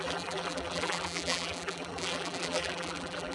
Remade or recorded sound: remade